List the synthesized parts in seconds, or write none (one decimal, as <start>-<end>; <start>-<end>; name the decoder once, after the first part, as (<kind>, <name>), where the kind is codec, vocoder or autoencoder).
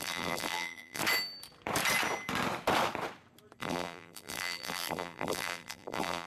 0.0-1.0 (vocoder, BigVGAN v2); 3.6-6.3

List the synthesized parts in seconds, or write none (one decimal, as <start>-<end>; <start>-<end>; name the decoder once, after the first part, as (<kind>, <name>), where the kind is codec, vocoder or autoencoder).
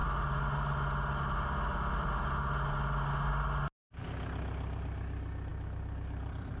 5.5-6.6 (vocoder, BigVGAN v2)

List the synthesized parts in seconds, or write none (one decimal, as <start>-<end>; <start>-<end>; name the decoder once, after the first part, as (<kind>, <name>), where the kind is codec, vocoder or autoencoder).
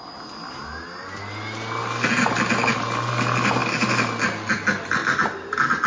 none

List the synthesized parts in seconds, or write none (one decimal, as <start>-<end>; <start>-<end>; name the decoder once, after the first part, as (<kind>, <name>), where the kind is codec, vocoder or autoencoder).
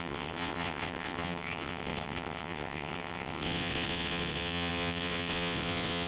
0.0-6.1 (vocoder, WaveNeXt)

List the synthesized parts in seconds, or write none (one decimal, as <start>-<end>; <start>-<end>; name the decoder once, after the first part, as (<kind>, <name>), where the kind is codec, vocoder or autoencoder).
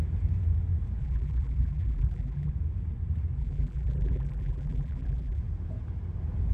1.0-2.5 (vocoder, BigVGAN v2); 3.4-5.4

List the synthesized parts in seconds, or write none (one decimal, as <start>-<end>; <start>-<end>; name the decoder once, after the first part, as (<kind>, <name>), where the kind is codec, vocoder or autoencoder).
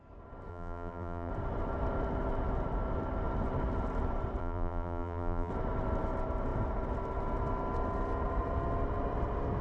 0.5-1.3 (vocoder, BigVGAN v2); 4.4-5.5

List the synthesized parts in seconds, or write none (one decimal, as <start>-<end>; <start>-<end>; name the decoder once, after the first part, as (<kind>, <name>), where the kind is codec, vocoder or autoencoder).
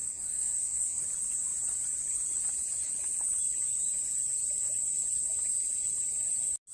0.0-1.0 (vocoder, Vocos)